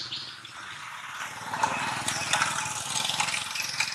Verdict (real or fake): real